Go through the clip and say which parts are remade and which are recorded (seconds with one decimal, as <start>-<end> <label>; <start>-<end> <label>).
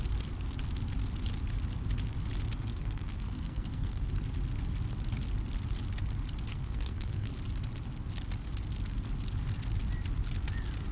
0.0-2.7 recorded; 2.7-4.1 remade; 4.1-6.5 recorded; 6.5-7.3 remade; 7.3-10.9 recorded